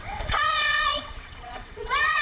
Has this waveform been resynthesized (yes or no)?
yes